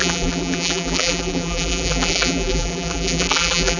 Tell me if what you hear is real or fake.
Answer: fake